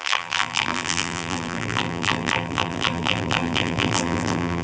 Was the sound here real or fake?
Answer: fake